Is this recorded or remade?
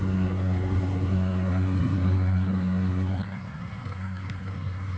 remade